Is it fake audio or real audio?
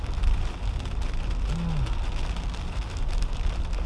real